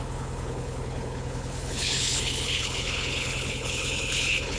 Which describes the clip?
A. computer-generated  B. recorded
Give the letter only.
A